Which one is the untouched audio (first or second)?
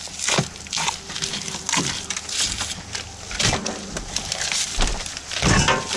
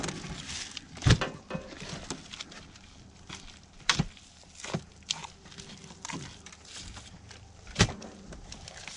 first